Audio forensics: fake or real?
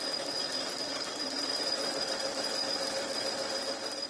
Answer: real